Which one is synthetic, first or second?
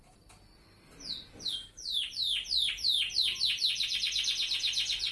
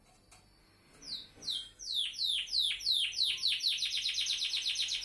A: first